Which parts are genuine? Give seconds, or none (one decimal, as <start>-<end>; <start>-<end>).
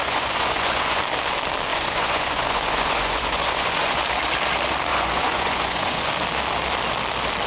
1.0-1.7; 4.0-4.9; 6.1-7.5